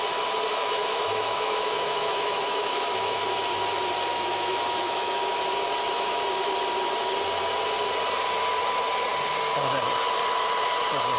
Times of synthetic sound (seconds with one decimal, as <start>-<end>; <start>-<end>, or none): 0.5-3.2; 4.1-5.4